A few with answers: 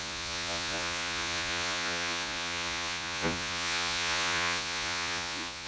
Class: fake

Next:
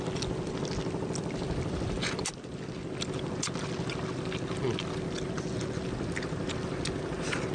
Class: real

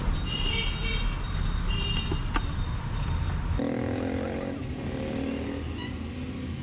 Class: real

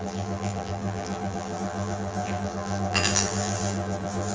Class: fake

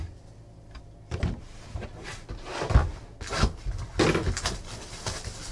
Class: real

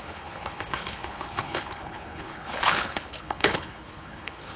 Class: fake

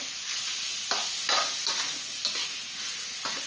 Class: real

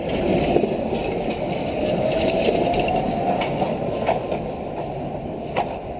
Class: real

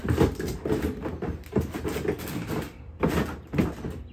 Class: real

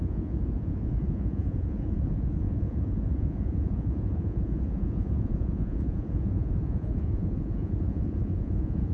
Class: fake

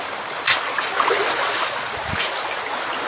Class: real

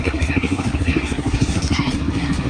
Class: fake